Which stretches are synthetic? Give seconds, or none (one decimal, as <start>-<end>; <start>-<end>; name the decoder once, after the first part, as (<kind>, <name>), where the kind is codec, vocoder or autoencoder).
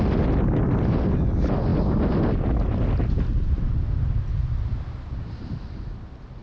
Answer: none